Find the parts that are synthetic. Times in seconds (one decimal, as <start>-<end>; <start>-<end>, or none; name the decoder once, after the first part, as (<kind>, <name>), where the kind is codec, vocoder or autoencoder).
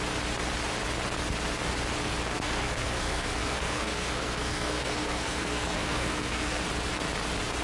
2.3-6.6 (codec, SNAC)